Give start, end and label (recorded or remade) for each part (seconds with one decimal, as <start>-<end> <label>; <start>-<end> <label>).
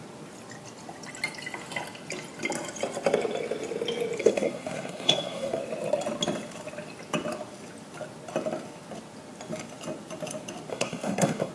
0.0-4.2 recorded; 4.2-5.6 remade; 5.6-10.7 recorded; 10.7-11.5 remade